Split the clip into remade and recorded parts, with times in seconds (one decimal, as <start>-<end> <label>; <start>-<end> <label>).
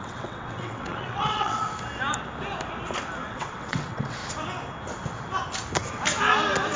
0.0-1.6 remade; 1.6-3.3 recorded; 3.3-4.2 remade; 4.2-6.8 recorded